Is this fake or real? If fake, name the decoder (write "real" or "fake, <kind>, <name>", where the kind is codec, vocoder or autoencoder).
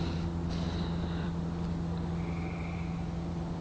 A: real